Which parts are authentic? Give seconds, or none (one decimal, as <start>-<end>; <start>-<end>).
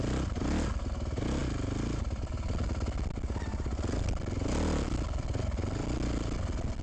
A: 0.0-6.8